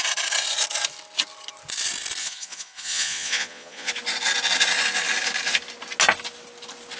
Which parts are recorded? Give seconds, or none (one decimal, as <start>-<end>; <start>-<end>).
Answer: 0.0-2.2; 3.9-7.0